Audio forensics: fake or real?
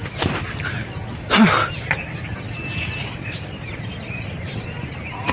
real